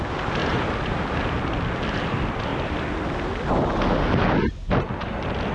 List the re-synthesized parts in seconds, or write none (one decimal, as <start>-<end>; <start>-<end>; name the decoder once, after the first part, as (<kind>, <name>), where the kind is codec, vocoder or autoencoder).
none